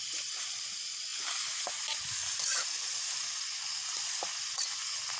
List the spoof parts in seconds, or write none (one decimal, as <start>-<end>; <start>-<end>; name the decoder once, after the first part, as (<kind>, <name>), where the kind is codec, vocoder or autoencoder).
none